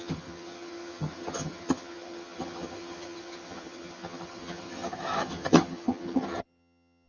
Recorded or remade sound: remade